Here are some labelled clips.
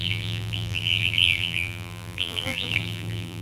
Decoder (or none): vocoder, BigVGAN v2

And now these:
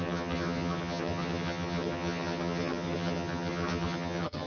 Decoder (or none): vocoder, HiFi-GAN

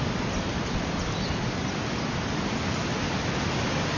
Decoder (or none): none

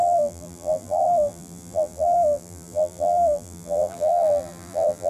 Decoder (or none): vocoder, BigVGAN v2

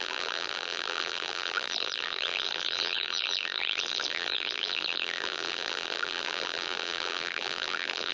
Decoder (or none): vocoder, BigVGAN v2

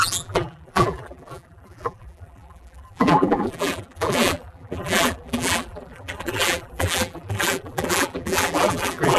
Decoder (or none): vocoder, BigVGAN v2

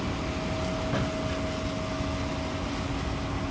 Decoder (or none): none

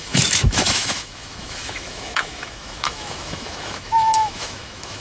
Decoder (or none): autoencoder, DAC-VAE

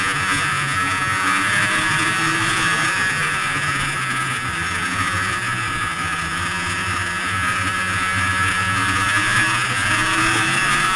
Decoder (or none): vocoder, Vocos